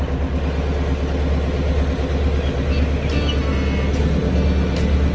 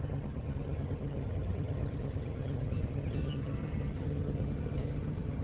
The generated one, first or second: second